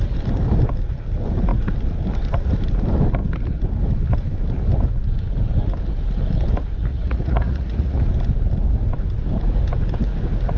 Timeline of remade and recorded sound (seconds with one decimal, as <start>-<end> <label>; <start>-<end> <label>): 0.0-6.9 recorded; 6.9-8.0 remade; 8.0-10.6 recorded